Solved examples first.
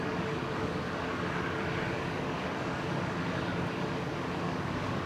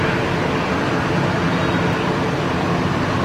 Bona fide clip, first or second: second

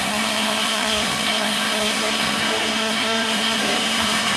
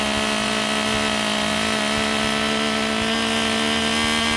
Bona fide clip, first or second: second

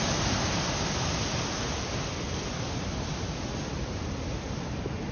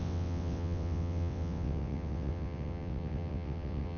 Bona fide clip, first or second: first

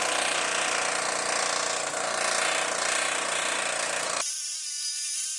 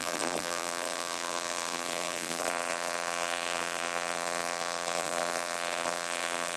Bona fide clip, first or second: first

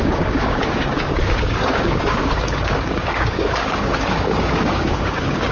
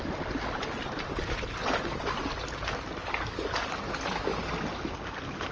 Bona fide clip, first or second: second